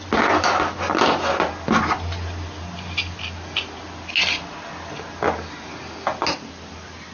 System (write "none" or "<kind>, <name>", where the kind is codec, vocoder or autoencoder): none